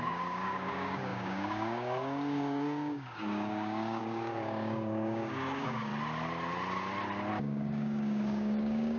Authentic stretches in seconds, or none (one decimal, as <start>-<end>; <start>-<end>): 5.9-7.3